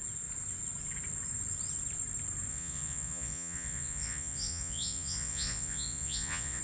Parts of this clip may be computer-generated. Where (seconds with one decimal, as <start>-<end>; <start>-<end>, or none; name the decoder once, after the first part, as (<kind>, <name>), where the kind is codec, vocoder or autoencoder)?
2.5-6.6 (vocoder, Vocos)